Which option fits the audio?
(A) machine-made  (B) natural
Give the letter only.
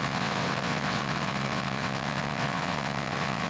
A